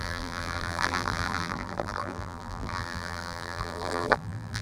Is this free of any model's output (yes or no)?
no